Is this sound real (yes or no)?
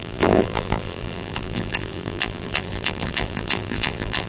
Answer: no